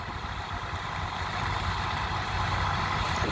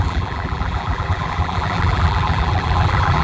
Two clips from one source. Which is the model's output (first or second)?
second